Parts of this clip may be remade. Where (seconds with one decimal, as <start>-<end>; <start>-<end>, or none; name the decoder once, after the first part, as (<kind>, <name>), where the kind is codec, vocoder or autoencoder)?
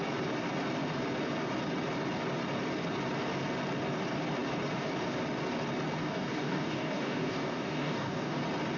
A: 6.0-8.4 (codec, DAC)